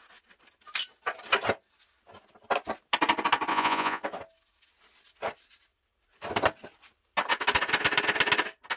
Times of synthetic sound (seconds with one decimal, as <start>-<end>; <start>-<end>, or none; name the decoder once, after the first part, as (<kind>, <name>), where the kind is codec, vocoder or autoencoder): 3.5-4.0 (vocoder, Vocos)